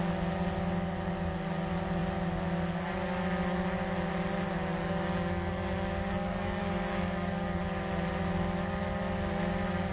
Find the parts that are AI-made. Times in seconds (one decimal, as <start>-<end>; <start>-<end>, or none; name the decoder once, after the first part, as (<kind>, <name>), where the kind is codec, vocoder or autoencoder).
4.8-7.6 (codec, DAC)